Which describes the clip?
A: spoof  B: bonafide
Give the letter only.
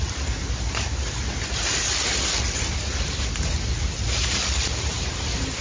B